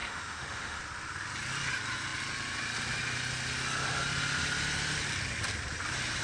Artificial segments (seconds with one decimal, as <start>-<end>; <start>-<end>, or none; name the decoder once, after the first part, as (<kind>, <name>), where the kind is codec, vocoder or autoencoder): 0.0-0.8 (autoencoder, DAC-VAE)